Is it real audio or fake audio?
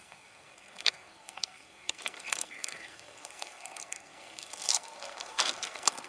fake